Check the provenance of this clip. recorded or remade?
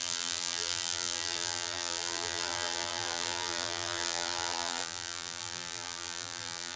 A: remade